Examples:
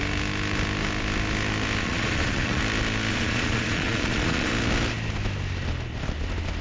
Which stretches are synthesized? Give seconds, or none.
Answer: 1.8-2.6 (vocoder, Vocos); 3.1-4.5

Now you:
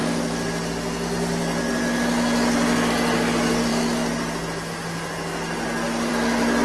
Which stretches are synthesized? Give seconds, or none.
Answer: none

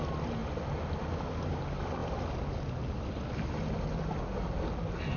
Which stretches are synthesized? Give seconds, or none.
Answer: none

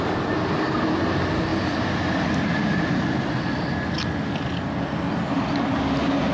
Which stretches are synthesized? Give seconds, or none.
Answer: none

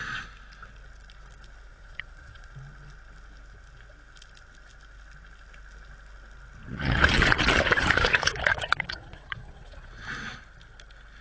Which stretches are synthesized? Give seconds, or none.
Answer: 1.7-2.5 (vocoder, Vocos); 6.7-9.9

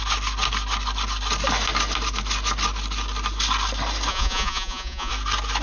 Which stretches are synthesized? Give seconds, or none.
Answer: 4.1-5.1 (vocoder, Vocos)